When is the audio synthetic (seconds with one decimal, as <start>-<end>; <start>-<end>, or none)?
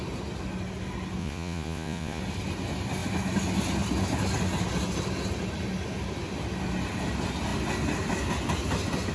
1.2-2.2